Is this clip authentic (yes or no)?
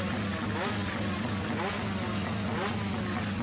yes